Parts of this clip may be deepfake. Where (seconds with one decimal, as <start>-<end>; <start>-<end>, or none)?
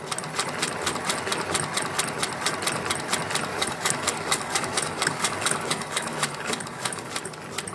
3.5-7.1